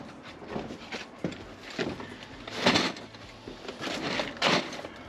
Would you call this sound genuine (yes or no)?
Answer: yes